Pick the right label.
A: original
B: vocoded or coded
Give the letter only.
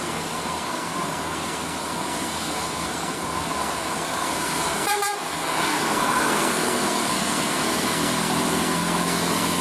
B